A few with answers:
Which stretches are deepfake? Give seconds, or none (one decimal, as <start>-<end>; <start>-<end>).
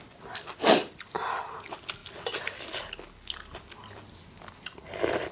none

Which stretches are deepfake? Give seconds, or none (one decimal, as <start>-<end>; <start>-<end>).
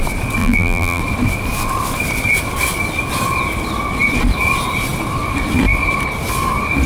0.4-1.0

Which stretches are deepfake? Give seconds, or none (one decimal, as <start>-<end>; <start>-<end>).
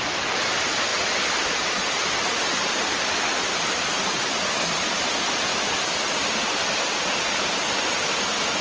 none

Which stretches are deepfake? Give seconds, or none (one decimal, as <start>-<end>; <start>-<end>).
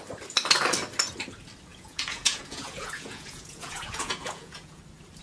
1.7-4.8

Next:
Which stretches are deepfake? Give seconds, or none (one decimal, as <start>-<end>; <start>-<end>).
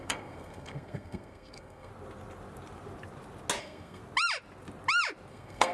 0.0-1.9; 3.6-4.0; 5.3-5.7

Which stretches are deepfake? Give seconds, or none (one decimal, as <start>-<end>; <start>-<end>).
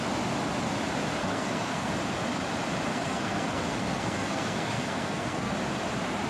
1.2-1.9; 2.9-5.5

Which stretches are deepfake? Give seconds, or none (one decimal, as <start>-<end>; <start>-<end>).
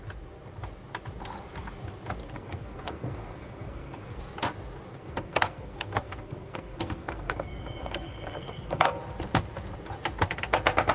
2.2-4.2; 4.9-9.0